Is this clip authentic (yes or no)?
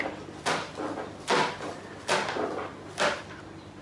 yes